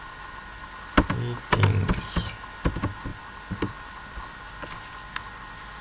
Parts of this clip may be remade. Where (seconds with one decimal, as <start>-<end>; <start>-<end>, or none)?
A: 3.1-4.5